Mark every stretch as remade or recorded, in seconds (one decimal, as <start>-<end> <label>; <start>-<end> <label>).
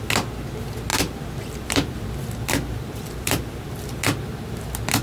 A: 0.0-0.9 recorded; 0.9-3.8 remade; 3.8-5.0 recorded